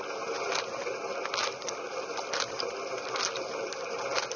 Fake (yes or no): no